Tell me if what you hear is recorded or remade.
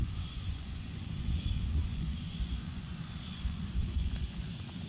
remade